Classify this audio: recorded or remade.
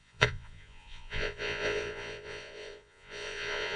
remade